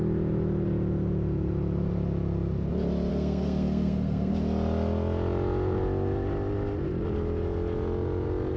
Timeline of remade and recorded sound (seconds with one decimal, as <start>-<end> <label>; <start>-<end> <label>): 0.0-3.1 recorded; 3.1-4.3 remade; 4.3-8.6 recorded

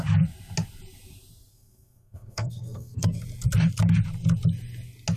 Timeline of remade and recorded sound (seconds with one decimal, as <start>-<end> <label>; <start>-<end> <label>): 0.0-1.5 recorded; 1.5-3.2 remade; 3.2-5.2 recorded

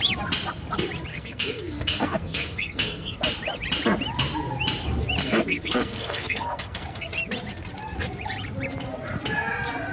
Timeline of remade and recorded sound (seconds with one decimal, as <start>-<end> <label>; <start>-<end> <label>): 0.0-1.1 recorded; 1.1-3.2 remade; 3.2-5.2 recorded; 5.2-7.1 remade; 7.1-9.9 recorded

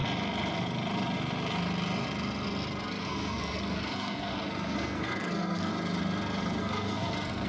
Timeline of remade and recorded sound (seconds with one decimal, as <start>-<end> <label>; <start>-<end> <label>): 0.0-3.0 recorded; 3.0-5.7 remade; 5.7-6.6 recorded; 6.6-7.5 remade

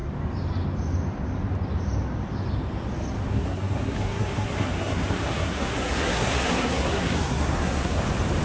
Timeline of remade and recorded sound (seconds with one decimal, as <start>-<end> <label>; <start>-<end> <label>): 0.0-3.3 recorded; 3.3-8.0 remade; 8.0-8.4 recorded

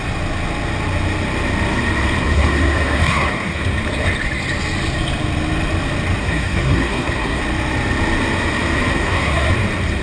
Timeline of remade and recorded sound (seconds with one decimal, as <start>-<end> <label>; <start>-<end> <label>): 0.0-2.2 recorded; 2.2-3.6 remade; 3.6-6.2 recorded; 6.2-7.4 remade; 7.4-8.9 recorded; 8.9-9.5 remade; 9.5-10.0 recorded

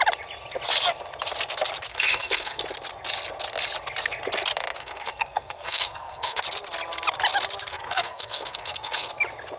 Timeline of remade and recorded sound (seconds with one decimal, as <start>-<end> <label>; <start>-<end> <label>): 0.0-1.9 recorded; 1.9-2.6 remade; 2.6-4.8 recorded; 4.8-6.4 remade; 6.4-7.7 recorded; 7.7-9.1 remade; 9.1-9.6 recorded